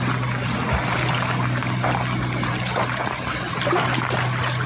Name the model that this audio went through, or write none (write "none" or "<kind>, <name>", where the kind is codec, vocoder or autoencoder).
none